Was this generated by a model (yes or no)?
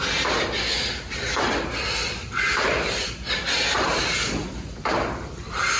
no